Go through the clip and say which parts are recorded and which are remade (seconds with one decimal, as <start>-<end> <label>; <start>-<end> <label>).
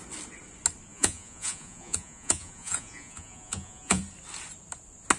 0.0-0.9 recorded; 0.9-4.0 remade; 4.0-5.2 recorded